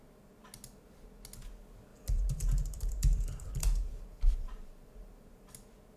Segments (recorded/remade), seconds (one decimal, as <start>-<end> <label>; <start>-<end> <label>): 0.0-1.9 recorded; 1.9-5.5 remade; 5.5-6.0 recorded